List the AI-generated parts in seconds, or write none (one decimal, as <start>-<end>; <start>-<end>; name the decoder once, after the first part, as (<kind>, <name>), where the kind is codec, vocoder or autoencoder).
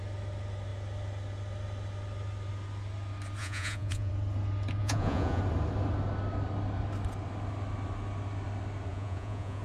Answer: 3.4-4.1 (vocoder, Vocos); 4.8-5.4; 8.9-9.6